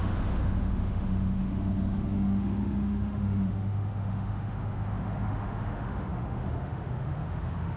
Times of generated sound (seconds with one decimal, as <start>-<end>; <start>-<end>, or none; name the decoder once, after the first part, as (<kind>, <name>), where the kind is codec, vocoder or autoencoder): 0.0-7.8 (autoencoder, DAC-VAE)